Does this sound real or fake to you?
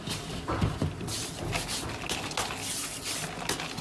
real